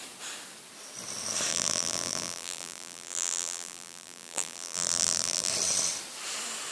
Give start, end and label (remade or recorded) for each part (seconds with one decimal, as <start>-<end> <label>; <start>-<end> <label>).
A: 0.0-1.5 recorded; 1.5-5.5 remade; 5.5-6.7 recorded